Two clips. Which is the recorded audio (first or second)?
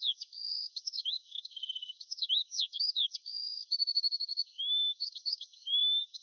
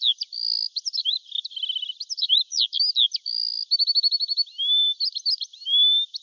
second